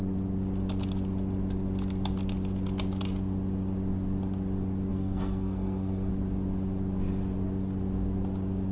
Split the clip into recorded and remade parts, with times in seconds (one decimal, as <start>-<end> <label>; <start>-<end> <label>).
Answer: 0.0-4.9 recorded; 4.9-6.1 remade; 6.1-8.7 recorded